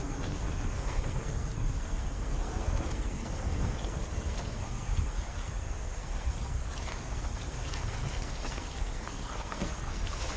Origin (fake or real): fake